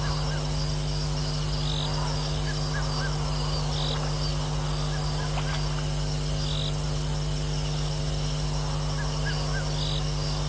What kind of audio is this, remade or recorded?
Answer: recorded